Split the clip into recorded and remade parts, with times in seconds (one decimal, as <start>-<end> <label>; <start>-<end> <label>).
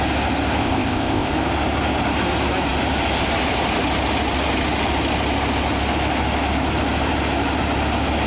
0.0-0.6 recorded; 0.6-1.3 remade; 1.3-8.3 recorded